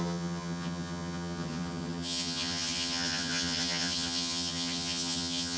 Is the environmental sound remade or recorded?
remade